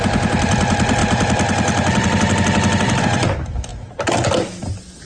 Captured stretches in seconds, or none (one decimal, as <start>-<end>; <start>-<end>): 3.7-4.6

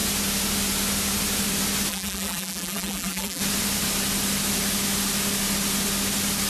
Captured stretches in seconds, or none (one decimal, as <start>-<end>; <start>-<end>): 0.0-1.9; 3.4-6.5

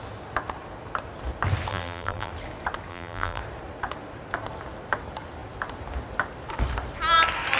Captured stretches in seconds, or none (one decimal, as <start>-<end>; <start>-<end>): 0.0-1.7; 2.3-2.9; 3.4-7.6

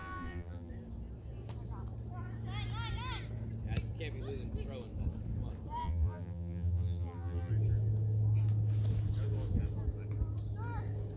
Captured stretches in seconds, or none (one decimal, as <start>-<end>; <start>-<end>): 0.7-5.8; 7.5-11.2

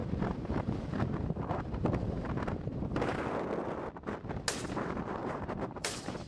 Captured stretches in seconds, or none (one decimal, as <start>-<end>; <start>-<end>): 3.2-5.2

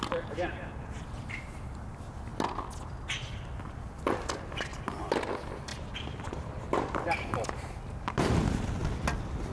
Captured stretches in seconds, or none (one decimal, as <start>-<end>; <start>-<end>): 2.3-3.3; 4.7-5.3

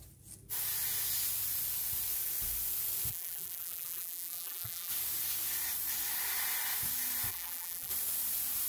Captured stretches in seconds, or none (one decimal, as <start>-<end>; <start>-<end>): 0.0-3.1; 4.9-7.3; 7.9-8.7